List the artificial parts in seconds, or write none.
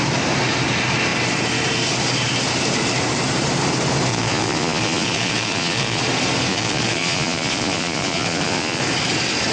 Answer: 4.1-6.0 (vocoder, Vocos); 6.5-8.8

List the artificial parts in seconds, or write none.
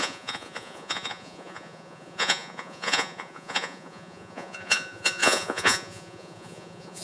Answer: 0.0-7.0 (vocoder, Vocos)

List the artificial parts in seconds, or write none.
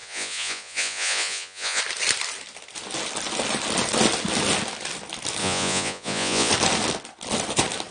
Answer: 0.0-1.8 (vocoder, Vocos); 5.4-6.5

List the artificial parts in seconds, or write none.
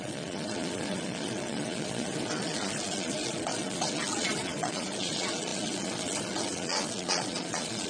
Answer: 0.0-7.9 (vocoder, Vocos)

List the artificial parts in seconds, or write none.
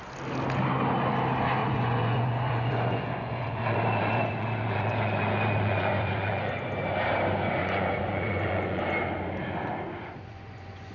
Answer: 1.6-6.7 (vocoder, Vocos); 7.6-8.8; 10.0-10.9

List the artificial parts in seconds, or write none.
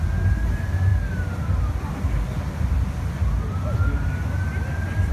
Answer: none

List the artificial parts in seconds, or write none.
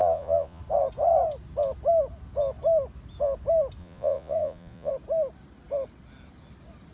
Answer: 0.0-0.6 (vocoder, Vocos); 3.8-4.9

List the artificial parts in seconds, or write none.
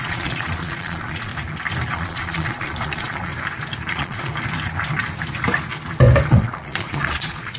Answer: 0.0-1.3 (vocoder, Vocos); 1.9-3.3; 3.9-4.3; 6.3-7.6